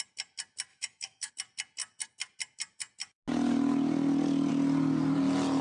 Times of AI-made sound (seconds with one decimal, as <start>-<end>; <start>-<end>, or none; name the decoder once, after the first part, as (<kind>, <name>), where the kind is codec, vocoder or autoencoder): 0.7-1.3 (autoencoder, DAC-VAE)